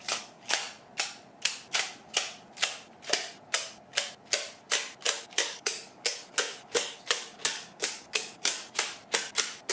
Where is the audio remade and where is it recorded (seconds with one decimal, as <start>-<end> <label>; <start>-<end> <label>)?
0.0-0.6 remade; 0.6-5.2 recorded; 5.2-9.0 remade; 9.0-9.7 recorded